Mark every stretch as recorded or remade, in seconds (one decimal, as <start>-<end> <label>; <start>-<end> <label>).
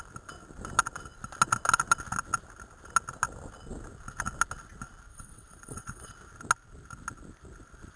0.0-5.1 recorded; 5.1-6.1 remade; 6.1-8.0 recorded